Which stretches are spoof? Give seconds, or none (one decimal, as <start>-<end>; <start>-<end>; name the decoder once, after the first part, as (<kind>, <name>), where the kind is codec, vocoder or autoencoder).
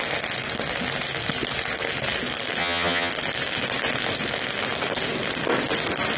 2.6-3.1 (vocoder, HiFi-GAN)